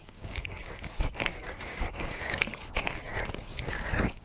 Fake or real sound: fake